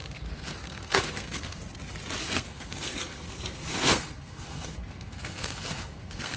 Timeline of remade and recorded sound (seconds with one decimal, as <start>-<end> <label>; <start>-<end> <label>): 0.0-1.6 remade; 1.6-2.2 recorded; 2.2-6.4 remade